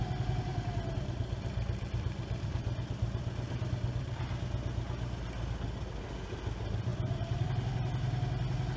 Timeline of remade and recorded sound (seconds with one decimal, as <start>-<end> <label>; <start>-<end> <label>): 0.0-0.5 recorded; 0.5-4.2 remade; 4.2-6.9 recorded; 6.9-7.5 remade; 7.5-8.8 recorded